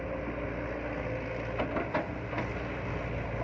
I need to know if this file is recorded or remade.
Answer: recorded